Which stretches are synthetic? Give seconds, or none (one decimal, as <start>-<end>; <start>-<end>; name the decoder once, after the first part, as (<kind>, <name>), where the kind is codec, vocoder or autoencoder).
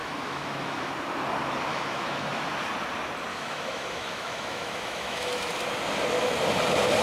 0.0-0.9 (autoencoder, DAC-VAE); 1.7-2.4; 3.3-5.5